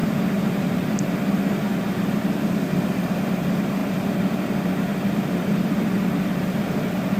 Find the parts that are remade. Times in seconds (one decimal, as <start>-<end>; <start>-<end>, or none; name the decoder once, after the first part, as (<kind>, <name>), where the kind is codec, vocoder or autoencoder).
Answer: 3.8-4.5 (vocoder, BigVGAN v2); 4.9-7.2